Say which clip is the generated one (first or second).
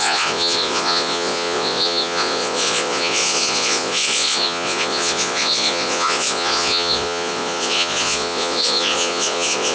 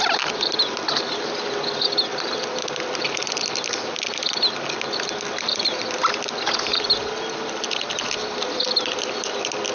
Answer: first